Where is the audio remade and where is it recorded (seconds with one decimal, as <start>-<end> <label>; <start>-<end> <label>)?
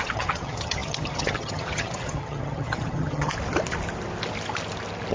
0.0-3.3 remade; 3.3-5.1 recorded